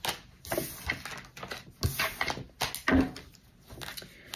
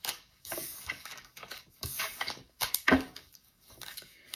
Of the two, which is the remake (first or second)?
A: second